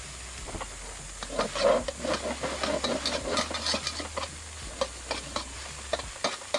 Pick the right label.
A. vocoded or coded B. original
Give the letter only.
B